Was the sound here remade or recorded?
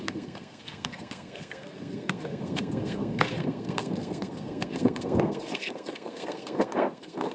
remade